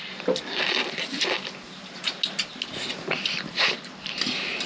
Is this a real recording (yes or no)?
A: yes